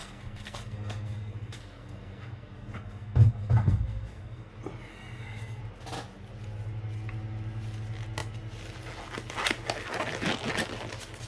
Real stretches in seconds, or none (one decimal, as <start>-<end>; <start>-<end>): 4.5-4.9; 5.6-11.3